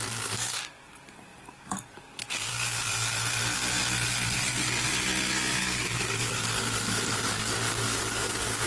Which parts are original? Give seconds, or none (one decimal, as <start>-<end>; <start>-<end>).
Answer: 2.9-5.6